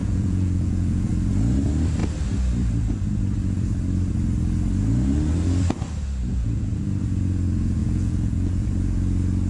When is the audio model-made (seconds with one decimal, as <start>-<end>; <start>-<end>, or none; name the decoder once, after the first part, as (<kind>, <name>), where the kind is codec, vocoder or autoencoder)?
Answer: 0.0-1.1 (vocoder, Vocos); 6.3-6.8; 7.8-8.7